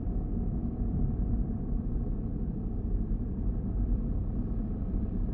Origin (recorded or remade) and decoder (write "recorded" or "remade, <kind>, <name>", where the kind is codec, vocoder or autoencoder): remade, vocoder, BigVGAN v2